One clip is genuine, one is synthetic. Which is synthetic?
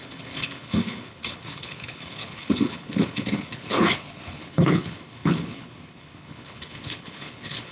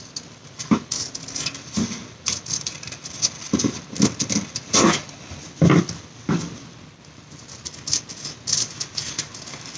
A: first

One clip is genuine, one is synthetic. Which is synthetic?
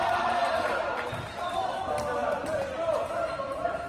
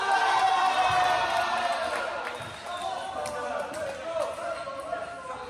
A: first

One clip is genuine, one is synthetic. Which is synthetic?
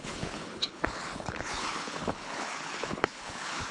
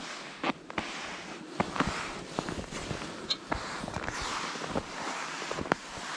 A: first